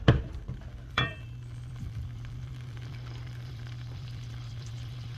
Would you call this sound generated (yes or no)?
yes